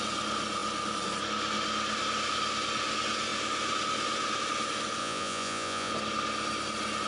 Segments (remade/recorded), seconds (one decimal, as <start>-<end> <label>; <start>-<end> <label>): 0.0-5.0 recorded; 5.0-5.9 remade; 5.9-7.1 recorded